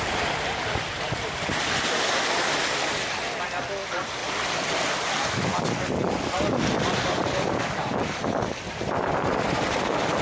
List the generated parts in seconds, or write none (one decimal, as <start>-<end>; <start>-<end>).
none